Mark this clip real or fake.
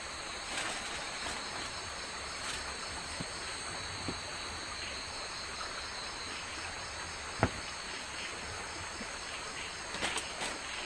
real